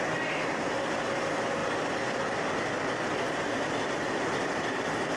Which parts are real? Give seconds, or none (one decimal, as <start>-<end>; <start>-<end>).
0.0-5.2